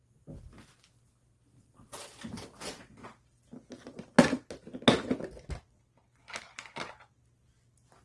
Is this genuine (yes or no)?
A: yes